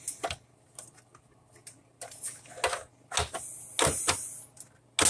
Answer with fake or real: real